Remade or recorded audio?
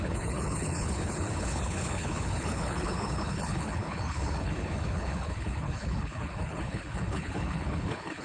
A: remade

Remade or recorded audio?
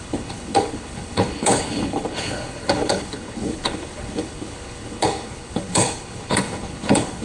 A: remade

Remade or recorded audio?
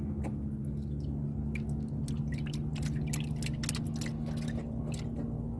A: recorded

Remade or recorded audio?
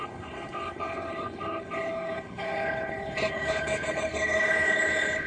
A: remade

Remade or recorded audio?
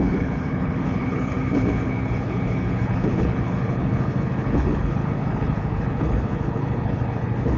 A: remade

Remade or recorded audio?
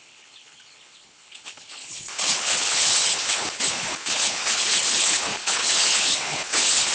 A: remade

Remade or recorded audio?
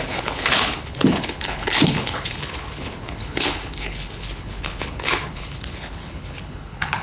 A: remade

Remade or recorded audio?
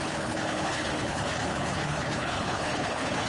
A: remade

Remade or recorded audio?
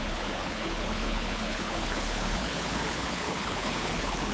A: remade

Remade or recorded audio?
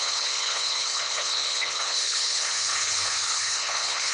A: remade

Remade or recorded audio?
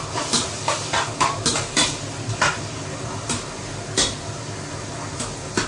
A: recorded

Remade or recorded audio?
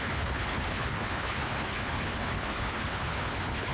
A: remade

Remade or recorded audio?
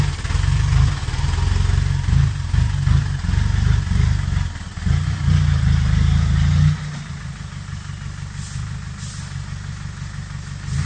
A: recorded